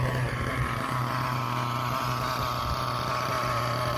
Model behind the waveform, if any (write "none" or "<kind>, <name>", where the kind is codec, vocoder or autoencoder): none